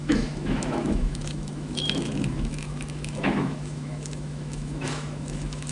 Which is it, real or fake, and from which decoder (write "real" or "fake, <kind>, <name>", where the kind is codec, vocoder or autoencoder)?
fake, autoencoder, DAC-VAE